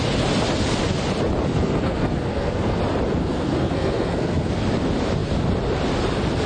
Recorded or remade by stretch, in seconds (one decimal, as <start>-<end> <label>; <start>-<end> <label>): 0.0-1.5 recorded; 1.5-2.8 remade; 2.8-3.2 recorded; 3.2-4.5 remade; 4.5-6.5 recorded